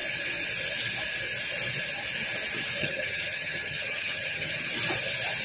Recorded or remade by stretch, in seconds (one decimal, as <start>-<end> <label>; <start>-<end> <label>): 0.0-2.8 recorded; 2.8-4.6 remade; 4.6-5.4 recorded